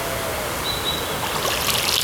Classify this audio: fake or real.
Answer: real